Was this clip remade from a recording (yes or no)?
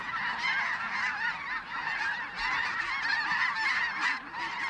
no